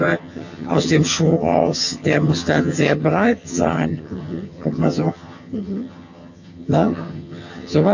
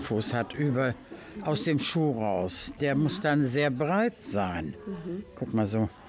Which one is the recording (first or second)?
second